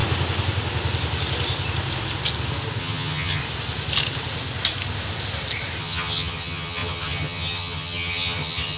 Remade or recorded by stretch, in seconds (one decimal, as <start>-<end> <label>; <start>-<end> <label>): 0.0-2.8 recorded; 2.8-3.4 remade; 3.4-5.8 recorded; 5.8-8.8 remade